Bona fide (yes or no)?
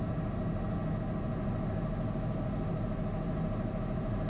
yes